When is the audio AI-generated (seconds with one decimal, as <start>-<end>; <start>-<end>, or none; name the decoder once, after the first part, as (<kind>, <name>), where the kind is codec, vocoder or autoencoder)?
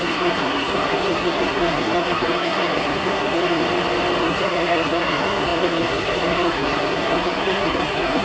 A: 0.0-3.6 (codec, SNAC); 4.2-8.2